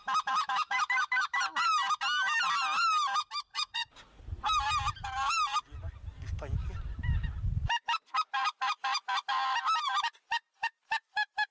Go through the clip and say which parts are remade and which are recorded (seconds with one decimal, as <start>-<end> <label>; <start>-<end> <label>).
0.0-3.5 recorded; 3.5-4.2 remade; 4.2-11.5 recorded